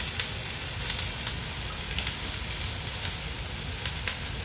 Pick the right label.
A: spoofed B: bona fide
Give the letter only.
B